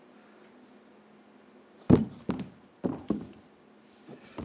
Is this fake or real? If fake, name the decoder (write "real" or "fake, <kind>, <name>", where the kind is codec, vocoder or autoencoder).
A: real